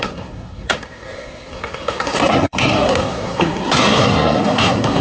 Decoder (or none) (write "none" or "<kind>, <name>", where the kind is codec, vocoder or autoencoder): codec, SNAC